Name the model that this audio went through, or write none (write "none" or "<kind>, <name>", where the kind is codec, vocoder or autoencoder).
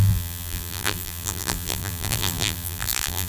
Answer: vocoder, BigVGAN v2